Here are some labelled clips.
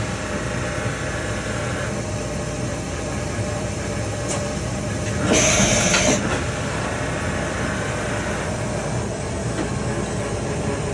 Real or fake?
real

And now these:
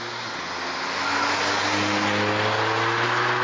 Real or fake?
real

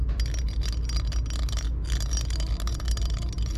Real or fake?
real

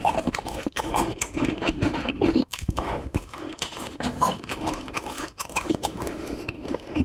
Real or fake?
fake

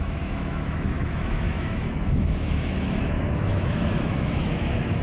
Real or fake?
fake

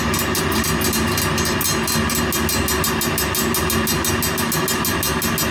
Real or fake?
real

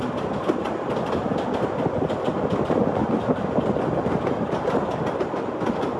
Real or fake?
real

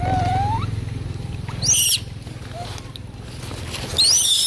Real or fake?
real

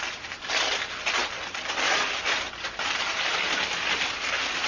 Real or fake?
real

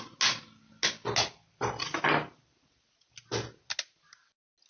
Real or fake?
real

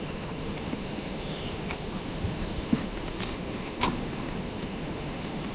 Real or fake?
fake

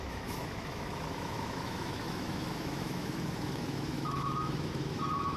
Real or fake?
fake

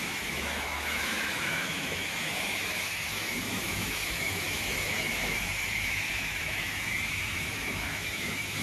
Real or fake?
fake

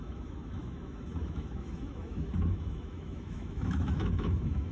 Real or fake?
fake